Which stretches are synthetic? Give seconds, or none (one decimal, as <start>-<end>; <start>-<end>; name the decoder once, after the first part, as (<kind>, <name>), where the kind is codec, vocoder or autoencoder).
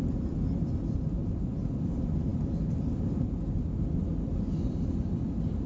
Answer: none